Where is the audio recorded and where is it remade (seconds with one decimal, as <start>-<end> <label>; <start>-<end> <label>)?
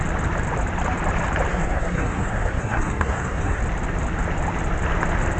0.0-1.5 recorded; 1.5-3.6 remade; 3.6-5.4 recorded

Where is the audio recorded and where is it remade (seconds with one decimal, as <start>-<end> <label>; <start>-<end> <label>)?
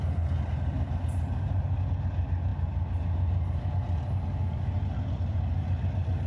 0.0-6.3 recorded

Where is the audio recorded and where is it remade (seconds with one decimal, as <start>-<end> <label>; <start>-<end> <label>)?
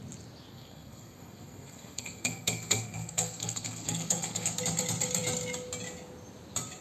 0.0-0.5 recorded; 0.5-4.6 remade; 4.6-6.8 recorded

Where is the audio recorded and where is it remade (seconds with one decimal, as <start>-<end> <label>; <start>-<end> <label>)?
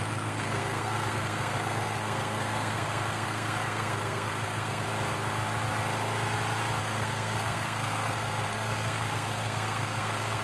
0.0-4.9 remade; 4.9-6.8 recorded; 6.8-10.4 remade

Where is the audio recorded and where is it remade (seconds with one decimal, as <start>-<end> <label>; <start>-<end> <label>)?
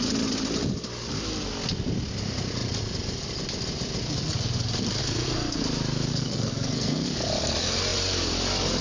0.0-5.0 recorded; 5.0-5.6 remade; 5.6-6.1 recorded; 6.1-7.3 remade; 7.3-8.8 recorded